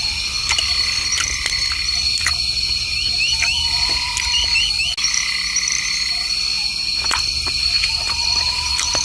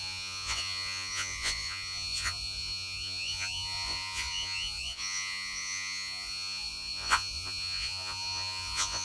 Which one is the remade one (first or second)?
second